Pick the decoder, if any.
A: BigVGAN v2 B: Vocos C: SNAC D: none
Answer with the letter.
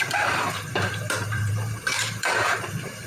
A